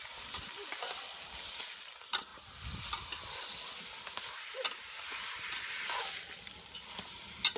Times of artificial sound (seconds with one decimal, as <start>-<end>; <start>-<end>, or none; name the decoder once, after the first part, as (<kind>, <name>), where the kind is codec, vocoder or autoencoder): 2.3-2.8 (vocoder, BigVGAN v2)